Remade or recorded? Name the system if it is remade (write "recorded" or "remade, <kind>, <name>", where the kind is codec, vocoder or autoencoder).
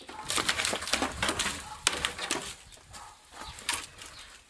recorded